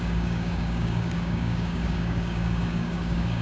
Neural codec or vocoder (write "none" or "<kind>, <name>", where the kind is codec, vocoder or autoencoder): codec, DAC